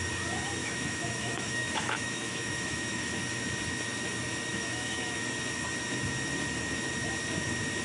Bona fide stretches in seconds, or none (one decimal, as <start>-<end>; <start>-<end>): 0.0-0.6; 3.2-4.5; 5.2-7.8